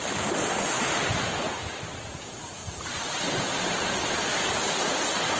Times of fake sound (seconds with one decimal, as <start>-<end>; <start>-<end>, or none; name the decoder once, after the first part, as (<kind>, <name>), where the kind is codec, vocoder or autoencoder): 2.6-3.3 (vocoder, BigVGAN v2); 4.3-4.8